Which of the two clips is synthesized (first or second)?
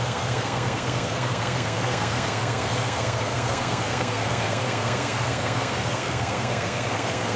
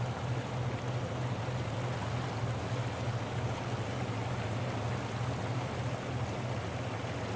first